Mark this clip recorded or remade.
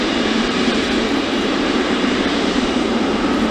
remade